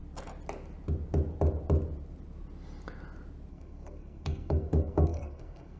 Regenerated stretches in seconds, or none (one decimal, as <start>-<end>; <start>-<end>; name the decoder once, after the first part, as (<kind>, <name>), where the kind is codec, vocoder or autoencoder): 3.5-5.8 (codec, SNAC)